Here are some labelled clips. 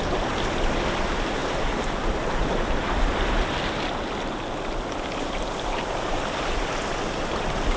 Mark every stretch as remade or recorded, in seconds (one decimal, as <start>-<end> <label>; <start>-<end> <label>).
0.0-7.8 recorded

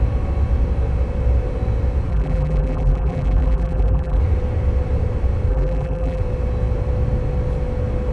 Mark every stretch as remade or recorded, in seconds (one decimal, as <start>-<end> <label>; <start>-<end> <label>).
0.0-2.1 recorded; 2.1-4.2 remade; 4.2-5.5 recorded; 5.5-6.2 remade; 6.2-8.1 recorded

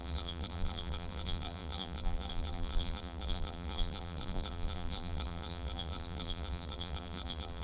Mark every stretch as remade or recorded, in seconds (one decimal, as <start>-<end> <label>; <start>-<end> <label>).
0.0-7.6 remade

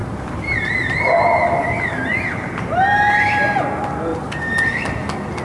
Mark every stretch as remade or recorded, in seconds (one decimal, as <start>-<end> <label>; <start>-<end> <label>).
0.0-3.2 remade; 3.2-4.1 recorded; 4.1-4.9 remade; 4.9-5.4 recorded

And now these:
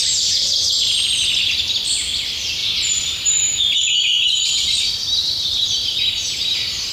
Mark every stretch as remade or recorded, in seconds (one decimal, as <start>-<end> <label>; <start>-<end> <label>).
0.0-1.0 remade; 1.0-2.6 recorded; 2.6-6.9 remade